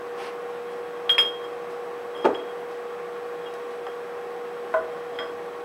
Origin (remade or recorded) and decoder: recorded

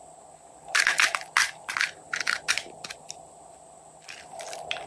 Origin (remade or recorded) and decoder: recorded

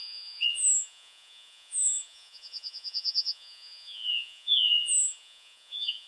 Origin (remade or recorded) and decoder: remade, vocoder, Vocos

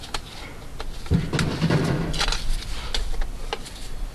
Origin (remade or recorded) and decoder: recorded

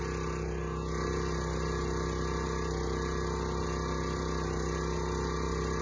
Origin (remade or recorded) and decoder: recorded